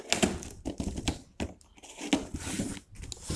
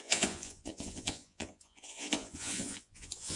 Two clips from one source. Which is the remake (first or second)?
second